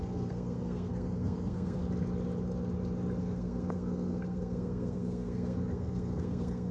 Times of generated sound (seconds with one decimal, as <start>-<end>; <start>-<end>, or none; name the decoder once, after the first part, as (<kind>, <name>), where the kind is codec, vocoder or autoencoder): 0.0-1.8 (codec, SNAC); 3.2-6.7